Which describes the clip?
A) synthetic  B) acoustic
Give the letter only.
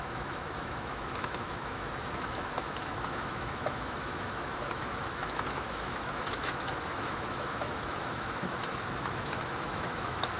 A